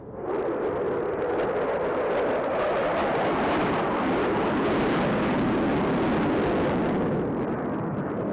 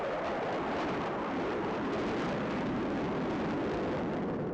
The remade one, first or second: second